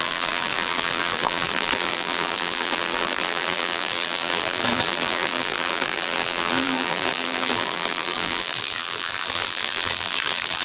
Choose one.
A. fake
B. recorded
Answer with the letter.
A